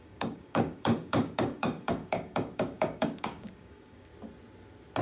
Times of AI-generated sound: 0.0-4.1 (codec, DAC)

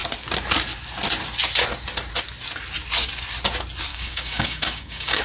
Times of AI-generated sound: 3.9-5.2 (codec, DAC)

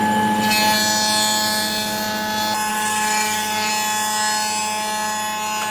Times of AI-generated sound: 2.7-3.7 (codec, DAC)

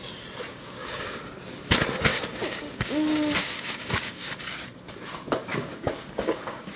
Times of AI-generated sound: 0.5-1.2 (codec, DAC); 2.1-4.3; 5.5-6.8

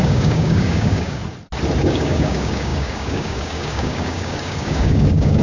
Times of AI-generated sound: 0.0-1.2 (codec, DAC); 1.8-5.4